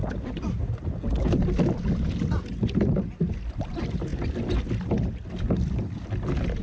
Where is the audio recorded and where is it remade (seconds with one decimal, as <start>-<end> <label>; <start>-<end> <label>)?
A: 0.0-6.6 recorded

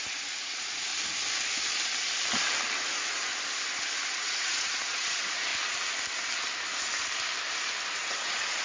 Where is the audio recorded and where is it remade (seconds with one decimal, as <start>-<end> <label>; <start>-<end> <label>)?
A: 0.0-0.9 remade; 0.9-2.8 recorded; 2.8-3.3 remade; 3.3-4.2 recorded; 4.2-5.5 remade; 5.5-7.9 recorded; 7.9-8.6 remade

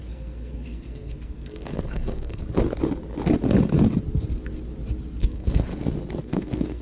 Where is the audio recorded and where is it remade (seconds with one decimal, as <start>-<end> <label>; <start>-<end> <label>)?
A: 0.0-2.4 remade; 2.4-5.2 recorded; 5.2-5.7 remade; 5.7-6.2 recorded; 6.2-6.8 remade